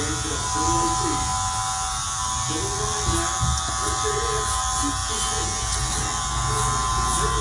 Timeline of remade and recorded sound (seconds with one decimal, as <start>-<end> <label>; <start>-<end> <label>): 0.0-7.4 recorded